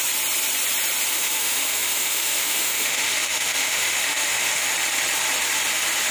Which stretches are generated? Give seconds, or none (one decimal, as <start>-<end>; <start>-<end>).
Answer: 1.1-4.7